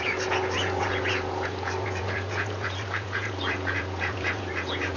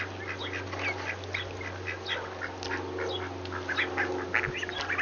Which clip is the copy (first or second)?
first